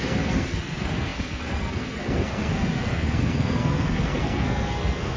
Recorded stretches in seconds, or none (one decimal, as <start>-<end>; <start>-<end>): none